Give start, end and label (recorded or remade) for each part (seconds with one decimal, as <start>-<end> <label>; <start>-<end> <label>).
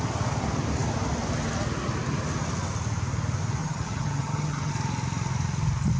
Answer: 0.0-3.6 recorded; 3.6-4.7 remade; 4.7-6.0 recorded